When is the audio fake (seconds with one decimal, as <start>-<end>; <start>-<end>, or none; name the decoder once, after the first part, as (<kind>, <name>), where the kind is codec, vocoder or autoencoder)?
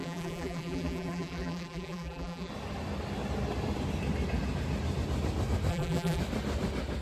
0.0-2.5 (vocoder, BigVGAN v2); 5.7-6.2